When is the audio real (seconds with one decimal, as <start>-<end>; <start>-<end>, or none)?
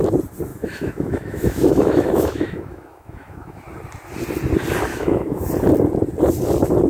0.0-0.5; 3.6-4.9; 5.5-6.9